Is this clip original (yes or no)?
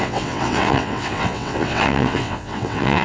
no